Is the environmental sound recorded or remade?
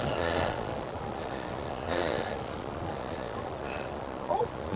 remade